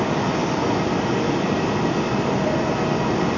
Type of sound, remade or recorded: recorded